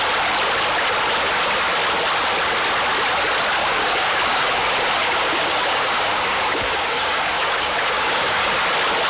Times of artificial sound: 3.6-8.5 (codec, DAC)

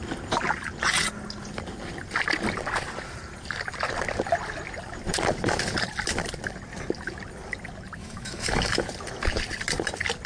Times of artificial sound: 8.0-8.8 (autoencoder, DAC-VAE)